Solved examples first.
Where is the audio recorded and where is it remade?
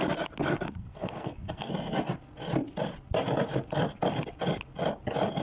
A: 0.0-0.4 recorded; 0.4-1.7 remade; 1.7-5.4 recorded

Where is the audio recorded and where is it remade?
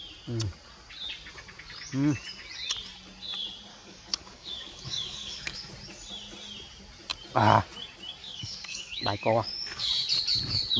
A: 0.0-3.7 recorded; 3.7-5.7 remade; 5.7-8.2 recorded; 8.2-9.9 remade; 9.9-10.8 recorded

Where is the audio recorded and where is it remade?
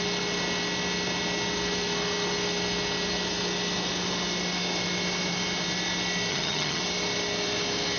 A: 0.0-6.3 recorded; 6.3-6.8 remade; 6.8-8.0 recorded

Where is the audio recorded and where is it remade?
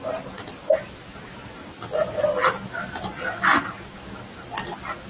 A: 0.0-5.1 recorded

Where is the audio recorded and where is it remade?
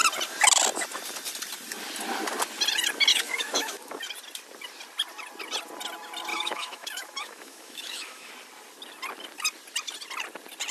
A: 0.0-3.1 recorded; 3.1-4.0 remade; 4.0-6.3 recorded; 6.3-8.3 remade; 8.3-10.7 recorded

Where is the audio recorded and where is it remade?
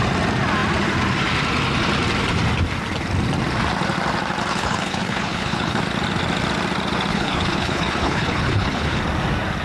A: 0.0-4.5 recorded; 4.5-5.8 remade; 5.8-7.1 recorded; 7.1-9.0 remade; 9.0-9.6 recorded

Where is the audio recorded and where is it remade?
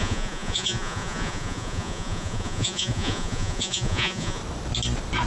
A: 0.0-4.4 remade; 4.4-5.3 recorded